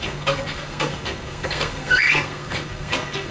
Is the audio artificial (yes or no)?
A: yes